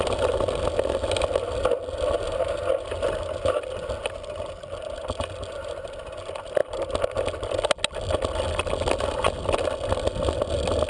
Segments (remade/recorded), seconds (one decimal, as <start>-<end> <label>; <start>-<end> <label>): 0.0-10.9 recorded